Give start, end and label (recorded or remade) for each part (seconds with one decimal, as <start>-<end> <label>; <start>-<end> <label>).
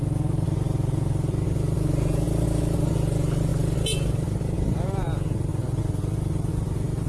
0.0-7.1 recorded